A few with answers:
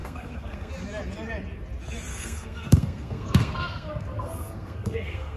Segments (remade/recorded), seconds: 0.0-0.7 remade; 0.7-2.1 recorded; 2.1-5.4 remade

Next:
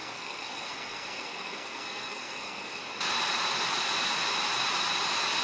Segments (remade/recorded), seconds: 0.0-2.8 remade; 2.8-5.4 recorded

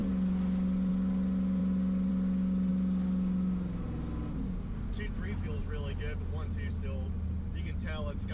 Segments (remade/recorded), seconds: 0.0-8.3 recorded

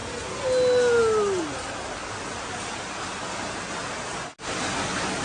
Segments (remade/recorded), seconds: 0.0-5.2 recorded

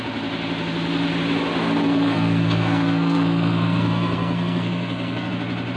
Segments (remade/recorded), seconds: 0.0-1.8 recorded; 1.8-5.3 remade; 5.3-5.8 recorded

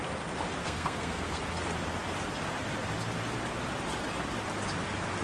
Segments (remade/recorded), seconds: 0.0-0.6 recorded; 0.6-1.4 remade; 1.4-5.2 recorded